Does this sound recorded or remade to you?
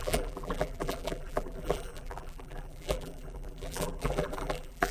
remade